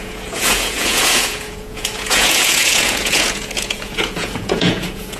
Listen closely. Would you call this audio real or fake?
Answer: fake